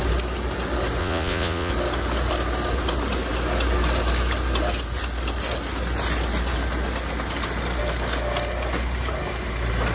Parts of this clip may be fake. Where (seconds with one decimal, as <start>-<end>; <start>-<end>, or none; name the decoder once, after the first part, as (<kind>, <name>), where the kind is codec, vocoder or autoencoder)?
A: 1.0-1.7 (vocoder, Vocos)